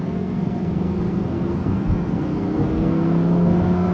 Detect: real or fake fake